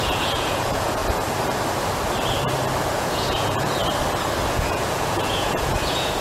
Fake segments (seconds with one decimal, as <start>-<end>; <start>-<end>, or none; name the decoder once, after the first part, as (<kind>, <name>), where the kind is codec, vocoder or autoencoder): 0.0-1.0 (vocoder, Vocos); 2.9-3.8; 4.5-6.2